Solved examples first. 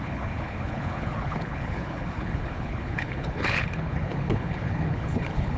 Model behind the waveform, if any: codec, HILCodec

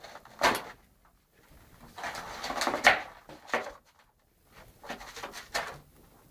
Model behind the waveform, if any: none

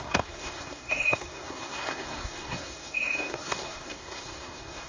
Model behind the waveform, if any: codec, SNAC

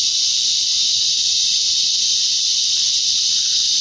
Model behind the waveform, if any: vocoder, BigVGAN v2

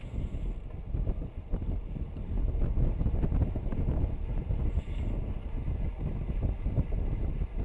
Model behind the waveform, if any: none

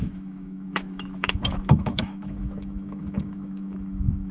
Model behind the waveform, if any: autoencoder, DAC-VAE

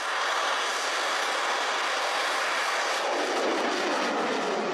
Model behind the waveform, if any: none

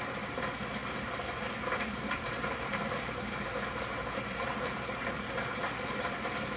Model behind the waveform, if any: vocoder, BigVGAN v2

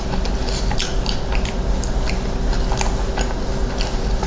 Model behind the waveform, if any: none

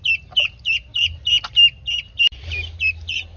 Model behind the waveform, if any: none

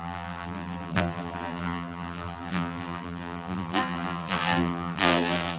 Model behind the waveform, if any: vocoder, BigVGAN v2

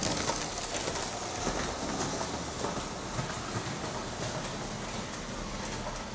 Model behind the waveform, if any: none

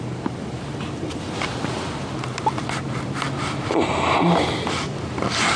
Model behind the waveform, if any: none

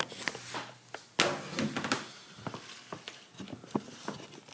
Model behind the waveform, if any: none